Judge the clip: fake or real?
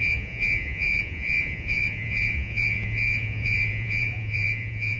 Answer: fake